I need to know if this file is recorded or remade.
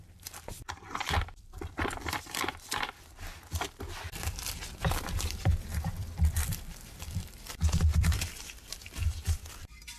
remade